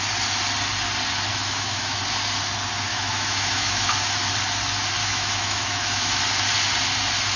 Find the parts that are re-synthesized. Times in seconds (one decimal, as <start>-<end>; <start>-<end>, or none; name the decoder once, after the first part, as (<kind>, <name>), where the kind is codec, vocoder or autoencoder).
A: 1.3-2.0 (autoencoder, DAC-VAE); 2.9-3.9; 5.0-6.2